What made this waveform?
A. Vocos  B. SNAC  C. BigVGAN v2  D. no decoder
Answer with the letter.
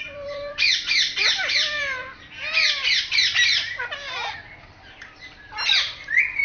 C